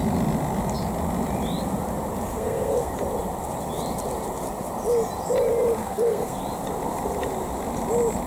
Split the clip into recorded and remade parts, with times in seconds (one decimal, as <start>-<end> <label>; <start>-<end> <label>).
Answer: 0.0-2.3 recorded; 2.3-2.9 remade; 2.9-5.8 recorded; 5.8-6.4 remade; 6.4-8.3 recorded